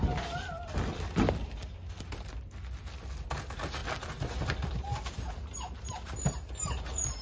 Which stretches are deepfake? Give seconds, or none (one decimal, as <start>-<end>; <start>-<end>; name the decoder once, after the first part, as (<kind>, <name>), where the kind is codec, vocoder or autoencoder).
none